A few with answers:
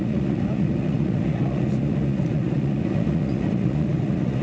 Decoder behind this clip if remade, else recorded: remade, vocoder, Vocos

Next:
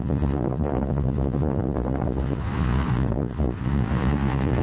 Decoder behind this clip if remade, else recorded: remade, vocoder, Vocos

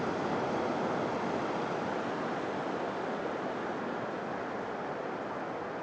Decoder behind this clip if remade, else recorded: recorded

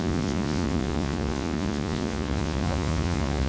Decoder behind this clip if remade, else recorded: remade, vocoder, Vocos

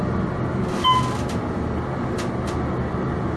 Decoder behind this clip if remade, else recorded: recorded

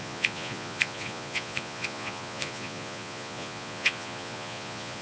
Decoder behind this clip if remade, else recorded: remade, vocoder, Vocos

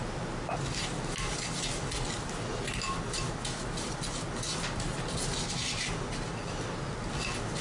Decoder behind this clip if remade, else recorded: recorded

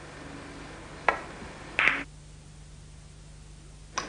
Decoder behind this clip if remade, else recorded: recorded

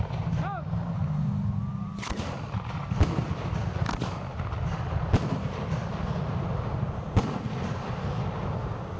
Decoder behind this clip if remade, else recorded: recorded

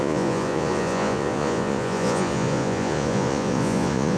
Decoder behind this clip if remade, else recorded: remade, vocoder, Vocos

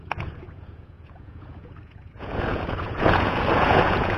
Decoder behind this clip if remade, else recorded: remade, vocoder, Vocos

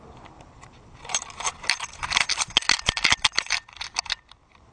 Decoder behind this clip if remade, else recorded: recorded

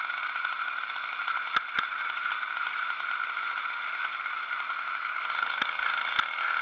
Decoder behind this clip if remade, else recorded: recorded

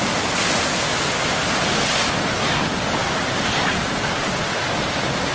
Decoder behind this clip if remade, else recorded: recorded